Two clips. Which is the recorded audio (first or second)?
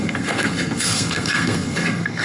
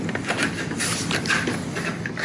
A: second